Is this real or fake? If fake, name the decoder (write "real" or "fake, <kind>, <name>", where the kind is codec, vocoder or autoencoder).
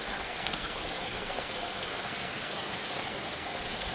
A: fake, codec, SNAC